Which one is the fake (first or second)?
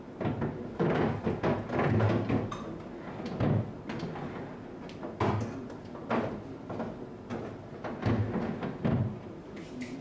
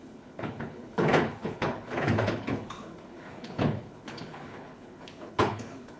second